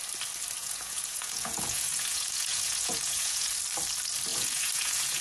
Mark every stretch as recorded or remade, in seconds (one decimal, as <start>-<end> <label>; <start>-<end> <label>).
0.0-0.6 recorded; 0.6-3.5 remade; 3.5-4.3 recorded; 4.3-5.2 remade

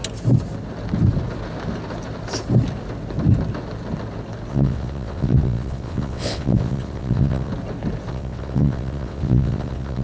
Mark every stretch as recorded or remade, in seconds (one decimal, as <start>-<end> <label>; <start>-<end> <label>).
0.0-4.5 recorded; 4.5-7.5 remade; 7.5-8.1 recorded; 8.1-10.0 remade

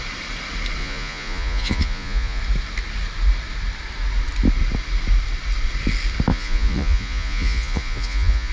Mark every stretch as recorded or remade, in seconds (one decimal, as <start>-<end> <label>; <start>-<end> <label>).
0.0-0.8 recorded; 0.8-2.4 remade; 2.4-6.3 recorded; 6.3-8.5 remade